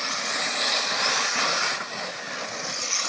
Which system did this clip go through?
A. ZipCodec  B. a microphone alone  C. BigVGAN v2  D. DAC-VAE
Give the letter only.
B